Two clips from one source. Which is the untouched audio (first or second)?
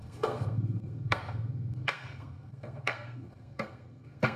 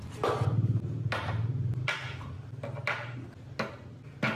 second